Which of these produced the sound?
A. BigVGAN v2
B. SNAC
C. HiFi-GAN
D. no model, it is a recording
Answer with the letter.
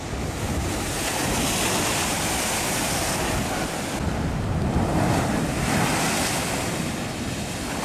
D